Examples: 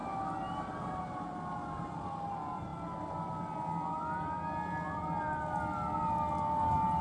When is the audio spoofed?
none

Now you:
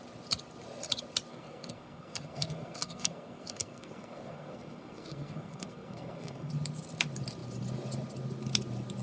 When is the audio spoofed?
1.3-6.5 (codec, SNAC)

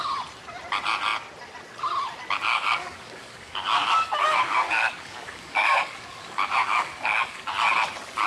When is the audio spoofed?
2.5-7.5 (codec, DAC)

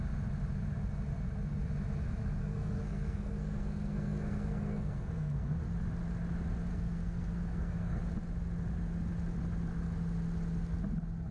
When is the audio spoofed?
2.4-5.6 (codec, SNAC); 6.7-8.0

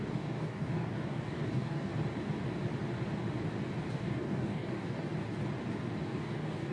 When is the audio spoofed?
0.0-1.9 (codec, DAC); 3.9-5.0; 6.0-6.7

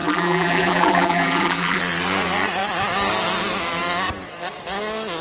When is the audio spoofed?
0.0-1.8 (vocoder, BigVGAN v2)

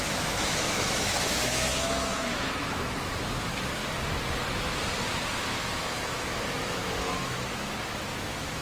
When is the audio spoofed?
0.0-3.8 (autoencoder, DAC-VAE); 5.6-8.6